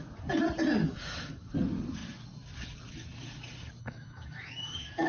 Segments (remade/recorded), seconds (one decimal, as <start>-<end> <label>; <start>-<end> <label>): 0.0-0.8 recorded; 0.8-1.5 remade; 1.5-3.8 recorded; 3.8-5.1 remade